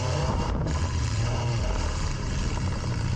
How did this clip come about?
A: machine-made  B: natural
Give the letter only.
A